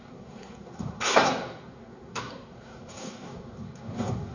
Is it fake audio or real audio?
fake